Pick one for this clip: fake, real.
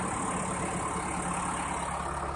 real